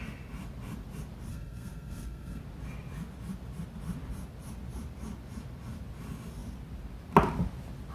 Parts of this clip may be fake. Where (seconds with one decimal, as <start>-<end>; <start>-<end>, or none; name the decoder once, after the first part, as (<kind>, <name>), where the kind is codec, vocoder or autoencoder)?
1.3-2.4 (codec, SNAC)